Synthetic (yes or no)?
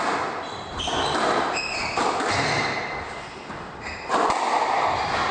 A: no